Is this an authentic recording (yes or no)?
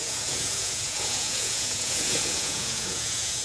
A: no